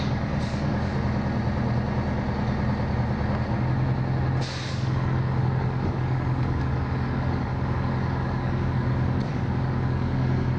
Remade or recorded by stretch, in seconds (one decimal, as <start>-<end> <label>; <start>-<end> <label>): 0.0-0.9 remade; 0.9-4.7 recorded; 4.7-10.6 remade